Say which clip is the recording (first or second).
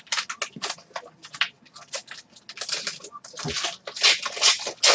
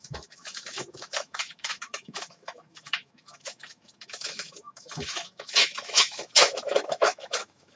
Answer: first